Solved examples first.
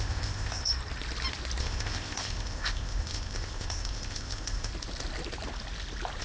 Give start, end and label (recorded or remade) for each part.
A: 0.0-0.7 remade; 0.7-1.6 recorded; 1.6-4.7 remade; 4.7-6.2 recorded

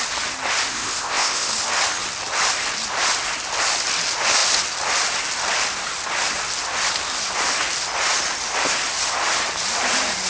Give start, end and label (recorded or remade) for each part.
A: 0.0-0.7 recorded; 0.7-1.5 remade; 1.5-10.3 recorded

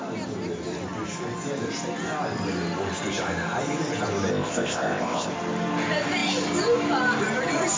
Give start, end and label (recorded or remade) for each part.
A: 0.0-4.3 recorded; 4.3-5.3 remade; 5.3-7.8 recorded